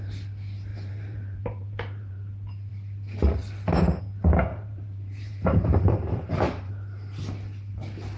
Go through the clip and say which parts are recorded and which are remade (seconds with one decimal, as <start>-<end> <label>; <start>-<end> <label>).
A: 0.0-0.7 recorded; 0.7-2.3 remade; 2.3-4.5 recorded; 4.5-6.7 remade; 6.7-8.2 recorded